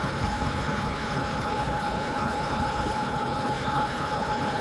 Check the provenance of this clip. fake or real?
fake